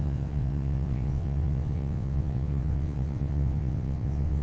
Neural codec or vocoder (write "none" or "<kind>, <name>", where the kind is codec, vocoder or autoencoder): vocoder, WaveNeXt